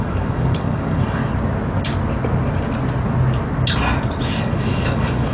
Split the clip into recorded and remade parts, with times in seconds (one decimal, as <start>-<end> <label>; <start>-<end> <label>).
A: 0.0-1.2 remade; 1.2-4.4 recorded; 4.4-5.3 remade